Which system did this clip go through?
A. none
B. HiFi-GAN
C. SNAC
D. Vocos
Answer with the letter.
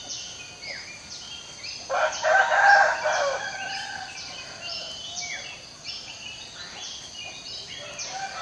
A